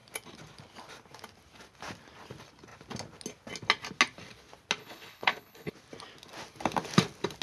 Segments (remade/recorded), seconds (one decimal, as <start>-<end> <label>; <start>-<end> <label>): 0.0-4.8 recorded; 4.8-5.7 remade; 5.7-7.4 recorded